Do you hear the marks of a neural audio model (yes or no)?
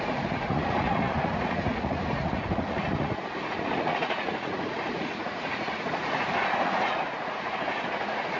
yes